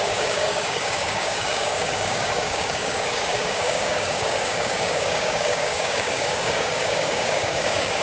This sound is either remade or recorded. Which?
remade